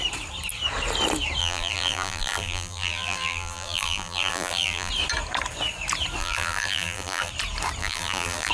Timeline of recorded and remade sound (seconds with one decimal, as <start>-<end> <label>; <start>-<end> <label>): 0.0-1.4 recorded; 1.4-4.9 remade; 4.9-6.2 recorded; 6.2-7.3 remade; 7.3-7.8 recorded; 7.8-8.5 remade